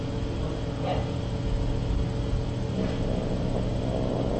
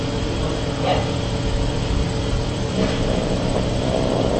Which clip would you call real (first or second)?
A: first